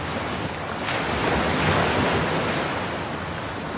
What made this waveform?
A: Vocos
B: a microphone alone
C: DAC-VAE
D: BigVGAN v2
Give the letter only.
B